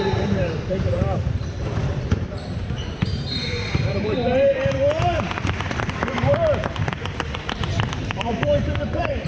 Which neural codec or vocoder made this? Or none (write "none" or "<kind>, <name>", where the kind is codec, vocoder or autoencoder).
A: vocoder, BigVGAN v2